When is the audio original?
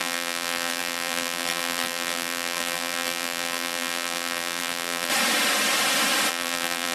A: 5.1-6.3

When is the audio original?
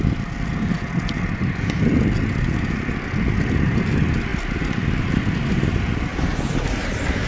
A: 0.0-7.3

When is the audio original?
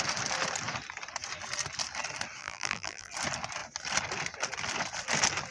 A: 0.0-2.4; 3.1-5.5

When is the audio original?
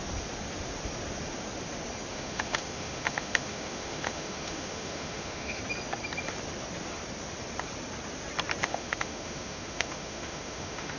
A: 0.0-2.1; 5.6-8.6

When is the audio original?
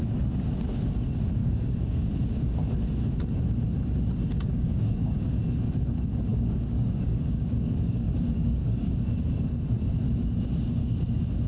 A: 0.0-1.4; 2.1-4.2; 5.4-6.3; 9.0-11.5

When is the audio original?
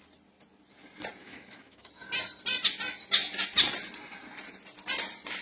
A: 0.0-1.2; 1.9-5.4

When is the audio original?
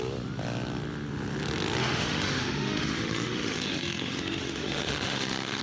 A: 0.0-1.8